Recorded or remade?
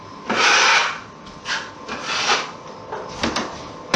recorded